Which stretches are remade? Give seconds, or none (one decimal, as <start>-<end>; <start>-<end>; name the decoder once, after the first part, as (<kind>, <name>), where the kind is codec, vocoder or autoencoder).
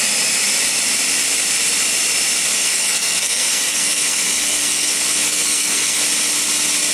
2.5-6.0 (codec, SNAC)